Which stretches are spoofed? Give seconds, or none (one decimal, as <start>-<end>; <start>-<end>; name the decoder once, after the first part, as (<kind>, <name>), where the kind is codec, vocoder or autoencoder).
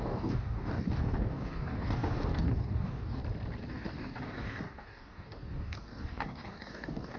0.0-3.2 (codec, DAC); 3.7-7.2